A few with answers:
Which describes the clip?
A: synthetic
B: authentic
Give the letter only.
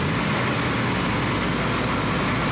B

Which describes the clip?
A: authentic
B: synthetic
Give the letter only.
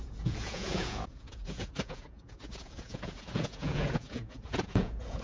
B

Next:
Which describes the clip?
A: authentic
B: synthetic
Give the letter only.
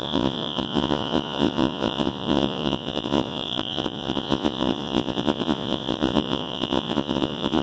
B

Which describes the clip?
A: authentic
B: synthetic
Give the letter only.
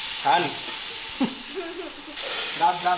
A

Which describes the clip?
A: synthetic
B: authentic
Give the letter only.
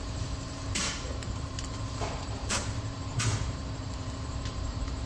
A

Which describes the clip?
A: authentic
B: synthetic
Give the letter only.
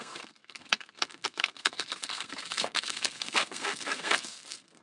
B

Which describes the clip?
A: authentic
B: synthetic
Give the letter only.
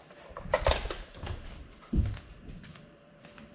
B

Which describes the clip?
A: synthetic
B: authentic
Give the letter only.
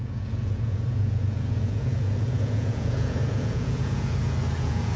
A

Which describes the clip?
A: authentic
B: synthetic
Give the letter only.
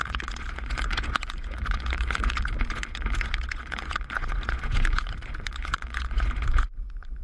B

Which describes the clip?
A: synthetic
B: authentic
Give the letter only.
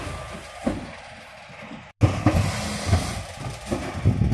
B